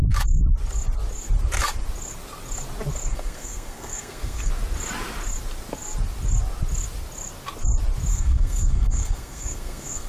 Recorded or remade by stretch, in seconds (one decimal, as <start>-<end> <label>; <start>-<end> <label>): 0.0-3.1 recorded; 3.1-4.5 remade; 4.5-8.1 recorded; 8.1-10.1 remade